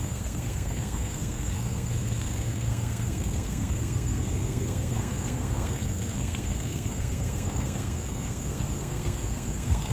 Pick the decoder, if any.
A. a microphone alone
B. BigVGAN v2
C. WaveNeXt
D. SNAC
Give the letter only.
D